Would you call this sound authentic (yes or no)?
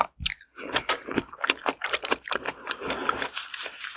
yes